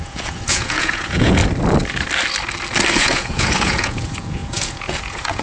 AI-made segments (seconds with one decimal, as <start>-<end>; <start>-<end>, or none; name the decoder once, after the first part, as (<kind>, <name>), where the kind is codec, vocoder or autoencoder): 0.0-1.4 (vocoder, Vocos); 3.0-5.4